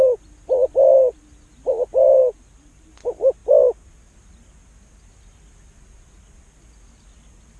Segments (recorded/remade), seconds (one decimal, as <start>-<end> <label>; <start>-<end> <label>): 0.0-2.2 recorded; 2.2-2.9 remade; 2.9-7.6 recorded